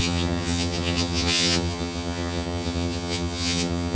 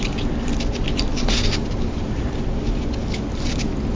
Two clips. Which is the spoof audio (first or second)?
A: first